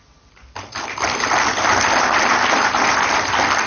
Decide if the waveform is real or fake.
real